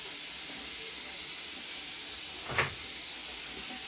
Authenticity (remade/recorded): recorded